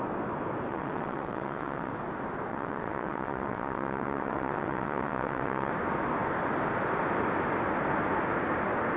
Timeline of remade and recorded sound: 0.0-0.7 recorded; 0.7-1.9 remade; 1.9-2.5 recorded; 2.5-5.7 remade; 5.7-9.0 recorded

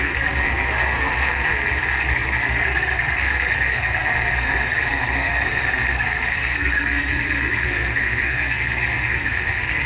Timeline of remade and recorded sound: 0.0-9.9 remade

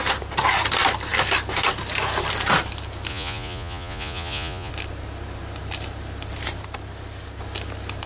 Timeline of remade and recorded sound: 0.0-3.1 recorded; 3.1-4.7 remade; 4.7-8.1 recorded